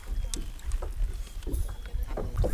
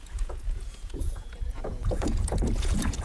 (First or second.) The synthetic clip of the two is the second